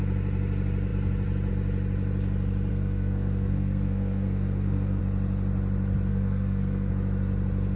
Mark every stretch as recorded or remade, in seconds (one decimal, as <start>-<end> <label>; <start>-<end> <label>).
0.0-2.7 recorded; 2.7-5.0 remade; 5.0-6.1 recorded; 6.1-6.9 remade; 6.9-7.8 recorded